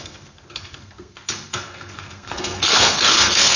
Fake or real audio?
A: fake